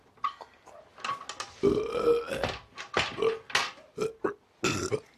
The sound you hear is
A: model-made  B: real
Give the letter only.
B